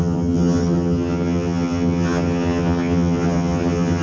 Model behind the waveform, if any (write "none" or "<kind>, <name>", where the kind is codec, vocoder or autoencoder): vocoder, HiFi-GAN